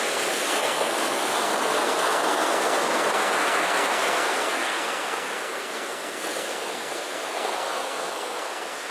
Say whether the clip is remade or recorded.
remade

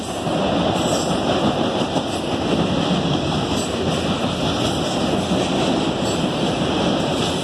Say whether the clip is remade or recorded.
recorded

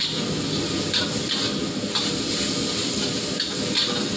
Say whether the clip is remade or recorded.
recorded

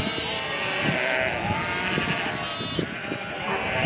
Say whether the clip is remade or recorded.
recorded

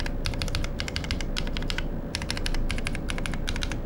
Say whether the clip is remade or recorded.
recorded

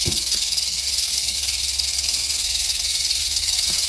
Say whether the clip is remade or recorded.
remade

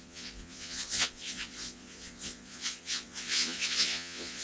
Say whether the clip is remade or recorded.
remade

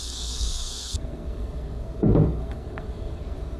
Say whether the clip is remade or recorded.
remade